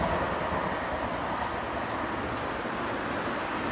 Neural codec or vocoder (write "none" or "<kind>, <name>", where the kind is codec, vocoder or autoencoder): none